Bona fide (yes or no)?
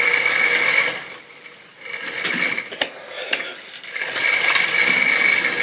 yes